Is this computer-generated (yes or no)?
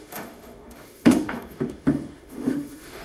yes